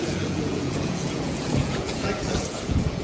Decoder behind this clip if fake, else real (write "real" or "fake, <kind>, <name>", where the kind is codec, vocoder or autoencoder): fake, vocoder, Vocos